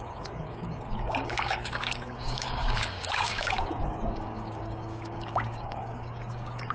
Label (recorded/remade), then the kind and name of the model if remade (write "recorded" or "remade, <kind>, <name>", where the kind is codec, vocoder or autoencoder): remade, codec, DAC